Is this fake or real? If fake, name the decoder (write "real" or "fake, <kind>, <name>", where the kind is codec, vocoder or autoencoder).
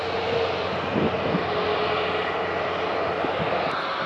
real